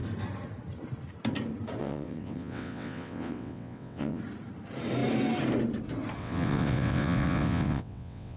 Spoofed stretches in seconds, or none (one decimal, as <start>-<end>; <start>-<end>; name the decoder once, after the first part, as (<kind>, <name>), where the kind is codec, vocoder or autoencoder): 1.8-4.2 (vocoder, WaveNeXt); 6.2-8.4